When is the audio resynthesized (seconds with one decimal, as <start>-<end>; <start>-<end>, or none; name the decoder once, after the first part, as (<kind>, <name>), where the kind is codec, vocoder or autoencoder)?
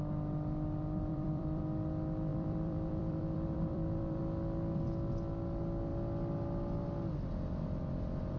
1.1-1.6 (vocoder, BigVGAN v2); 2.3-4.2